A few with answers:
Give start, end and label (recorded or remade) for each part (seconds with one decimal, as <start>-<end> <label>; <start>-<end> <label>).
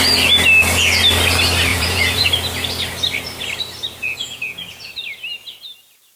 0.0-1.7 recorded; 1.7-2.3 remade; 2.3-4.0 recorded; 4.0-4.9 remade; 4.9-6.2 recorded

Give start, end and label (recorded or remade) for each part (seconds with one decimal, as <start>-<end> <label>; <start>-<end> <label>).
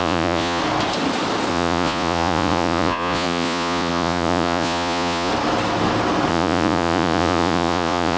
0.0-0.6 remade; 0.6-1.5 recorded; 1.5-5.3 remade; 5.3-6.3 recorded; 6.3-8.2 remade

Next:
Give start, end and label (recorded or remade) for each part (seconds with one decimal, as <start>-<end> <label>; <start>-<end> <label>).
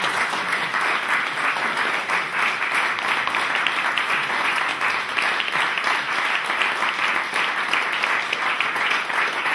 0.0-0.7 remade; 0.7-4.0 recorded; 4.0-4.7 remade; 4.7-8.5 recorded; 8.5-9.5 remade